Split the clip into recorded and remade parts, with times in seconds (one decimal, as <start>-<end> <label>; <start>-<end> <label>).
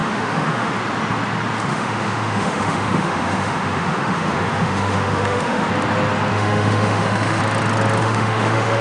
0.0-0.7 remade; 0.7-1.7 recorded; 1.7-5.7 remade; 5.7-6.3 recorded; 6.3-7.4 remade; 7.4-8.0 recorded; 8.0-8.8 remade